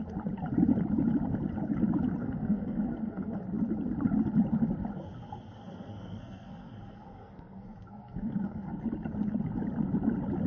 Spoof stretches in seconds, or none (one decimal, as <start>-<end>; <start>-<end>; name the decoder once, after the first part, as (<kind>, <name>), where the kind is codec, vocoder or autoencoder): 2.2-3.4 (codec, SNAC); 5.6-8.8